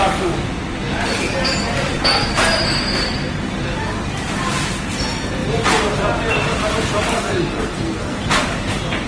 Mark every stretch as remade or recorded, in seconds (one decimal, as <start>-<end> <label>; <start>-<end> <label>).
0.0-7.1 recorded; 7.1-8.3 remade; 8.3-9.1 recorded